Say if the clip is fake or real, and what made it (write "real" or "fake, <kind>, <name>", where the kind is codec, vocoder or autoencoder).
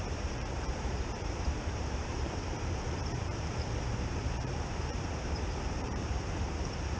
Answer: fake, vocoder, BigVGAN v2